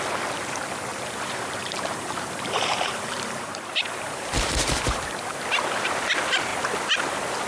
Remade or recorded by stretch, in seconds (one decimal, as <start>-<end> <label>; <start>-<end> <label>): 0.0-0.9 recorded; 0.9-5.0 remade; 5.0-7.5 recorded